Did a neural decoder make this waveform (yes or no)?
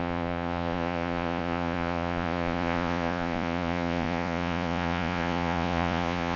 yes